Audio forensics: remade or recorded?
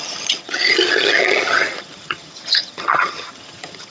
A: remade